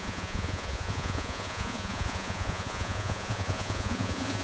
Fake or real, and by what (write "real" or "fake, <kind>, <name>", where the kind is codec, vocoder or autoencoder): fake, vocoder, Vocos